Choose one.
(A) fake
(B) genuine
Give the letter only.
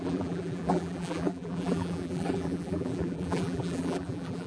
A